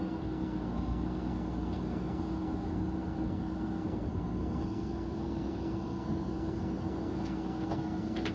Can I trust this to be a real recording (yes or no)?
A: no